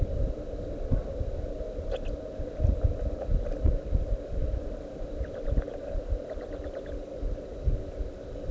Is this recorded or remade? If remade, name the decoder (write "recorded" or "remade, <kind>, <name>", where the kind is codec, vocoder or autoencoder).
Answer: recorded